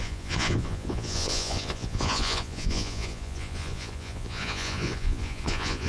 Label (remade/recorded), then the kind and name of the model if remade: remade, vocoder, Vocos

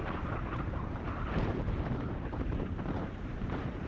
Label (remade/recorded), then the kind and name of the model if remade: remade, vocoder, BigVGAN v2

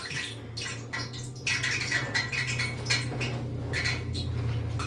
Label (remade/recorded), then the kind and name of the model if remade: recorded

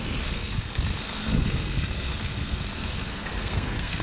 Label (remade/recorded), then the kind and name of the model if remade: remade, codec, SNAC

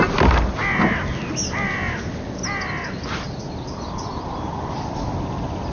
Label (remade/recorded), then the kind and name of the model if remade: recorded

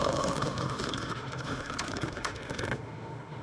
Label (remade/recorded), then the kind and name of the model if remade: remade, autoencoder, DAC-VAE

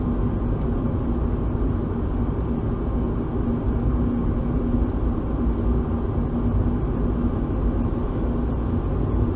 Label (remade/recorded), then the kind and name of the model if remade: recorded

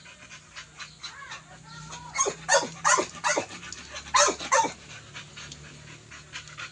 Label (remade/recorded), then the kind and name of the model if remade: recorded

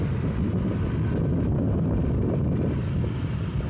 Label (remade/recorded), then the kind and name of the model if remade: recorded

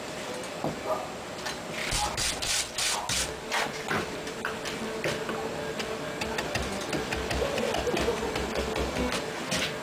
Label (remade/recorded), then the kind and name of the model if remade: recorded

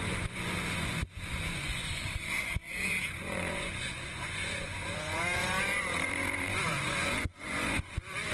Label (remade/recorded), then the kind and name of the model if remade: remade, vocoder, Vocos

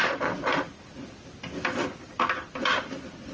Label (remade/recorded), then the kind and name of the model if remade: recorded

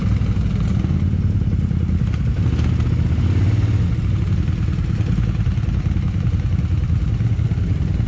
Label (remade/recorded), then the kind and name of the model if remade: recorded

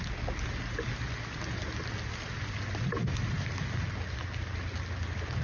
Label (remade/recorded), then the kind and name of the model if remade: recorded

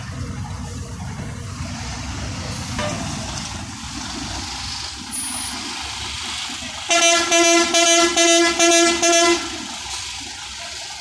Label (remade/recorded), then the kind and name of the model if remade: recorded